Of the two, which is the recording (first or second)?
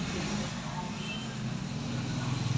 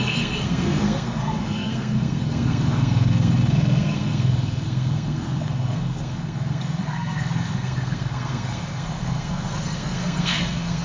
first